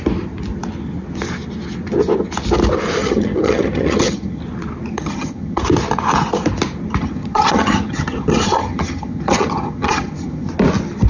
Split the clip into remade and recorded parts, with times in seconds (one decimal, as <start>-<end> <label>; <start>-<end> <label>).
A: 0.0-3.0 recorded; 3.0-4.4 remade; 4.4-4.9 recorded; 4.9-5.6 remade; 5.6-7.0 recorded; 7.0-10.5 remade; 10.5-11.1 recorded